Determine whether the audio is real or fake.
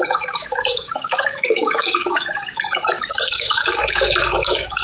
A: fake